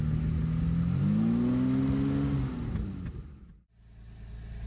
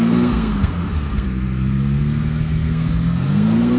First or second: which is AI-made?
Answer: second